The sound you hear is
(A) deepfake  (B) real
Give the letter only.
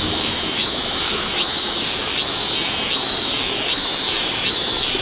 A